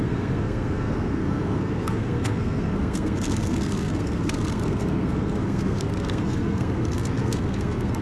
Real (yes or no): no